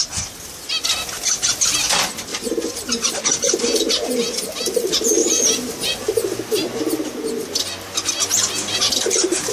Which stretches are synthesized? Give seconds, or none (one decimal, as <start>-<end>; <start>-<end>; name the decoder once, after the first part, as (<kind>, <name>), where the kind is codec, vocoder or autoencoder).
2.3-3.1 (vocoder, BigVGAN v2); 5.2-5.7